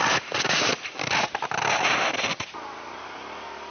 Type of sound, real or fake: real